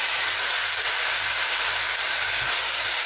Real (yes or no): yes